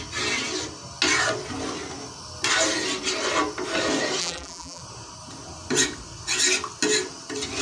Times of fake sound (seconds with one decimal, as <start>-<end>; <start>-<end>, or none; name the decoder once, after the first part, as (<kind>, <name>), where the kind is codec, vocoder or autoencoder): 4.2-4.8 (vocoder, BigVGAN v2)